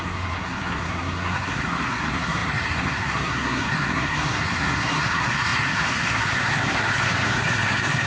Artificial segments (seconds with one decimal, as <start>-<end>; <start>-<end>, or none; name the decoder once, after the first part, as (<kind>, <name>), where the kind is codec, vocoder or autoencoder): 0.0-8.1 (codec, SNAC)